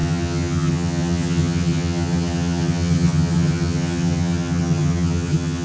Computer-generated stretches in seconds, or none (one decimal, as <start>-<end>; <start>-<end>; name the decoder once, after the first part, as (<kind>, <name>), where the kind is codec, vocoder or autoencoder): 0.0-5.6 (vocoder, HiFi-GAN)